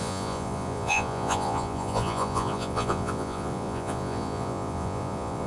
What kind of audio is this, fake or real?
fake